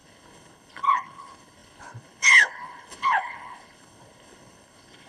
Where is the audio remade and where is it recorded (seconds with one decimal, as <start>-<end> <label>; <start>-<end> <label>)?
0.0-5.1 remade